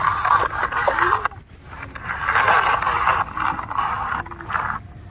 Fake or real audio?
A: real